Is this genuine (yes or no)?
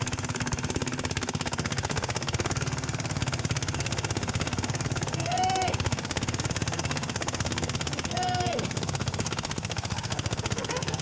no